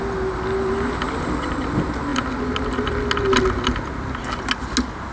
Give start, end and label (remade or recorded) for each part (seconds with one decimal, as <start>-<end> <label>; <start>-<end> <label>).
0.0-5.1 recorded